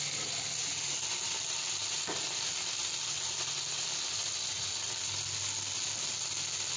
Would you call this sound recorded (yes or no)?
yes